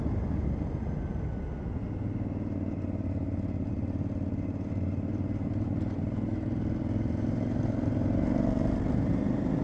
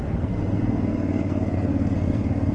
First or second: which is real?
first